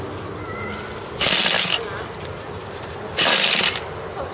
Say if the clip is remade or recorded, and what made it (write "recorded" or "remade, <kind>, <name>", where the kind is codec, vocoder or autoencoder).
recorded